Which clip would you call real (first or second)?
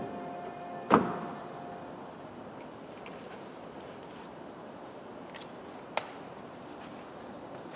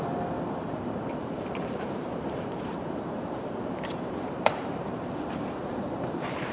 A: first